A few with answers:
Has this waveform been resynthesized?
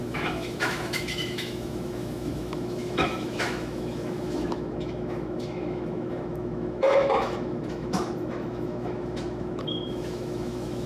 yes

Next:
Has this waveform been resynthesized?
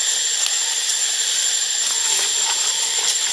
no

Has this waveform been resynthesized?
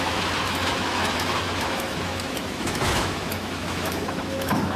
yes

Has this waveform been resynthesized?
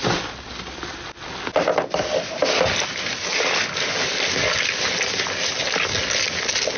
no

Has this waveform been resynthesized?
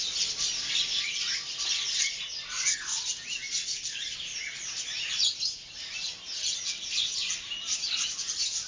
no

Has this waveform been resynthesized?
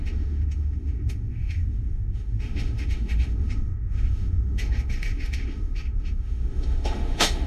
yes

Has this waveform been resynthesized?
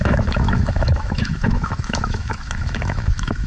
yes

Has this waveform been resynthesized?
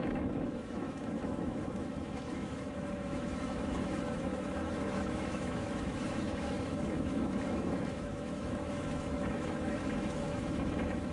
yes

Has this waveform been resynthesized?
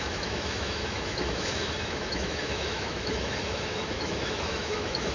yes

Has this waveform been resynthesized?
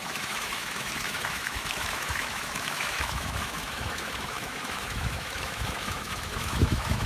yes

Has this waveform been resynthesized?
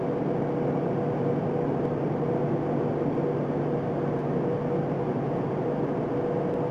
no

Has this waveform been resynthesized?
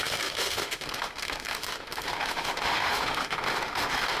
yes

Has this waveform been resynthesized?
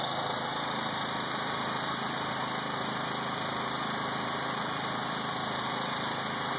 no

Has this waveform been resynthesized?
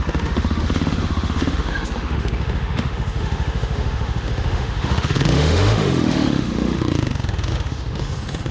yes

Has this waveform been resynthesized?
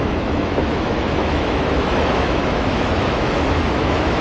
yes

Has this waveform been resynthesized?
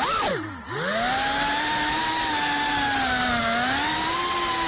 no